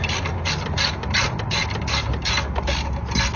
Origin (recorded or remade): recorded